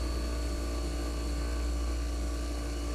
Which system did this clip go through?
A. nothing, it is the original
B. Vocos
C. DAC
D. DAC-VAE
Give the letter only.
A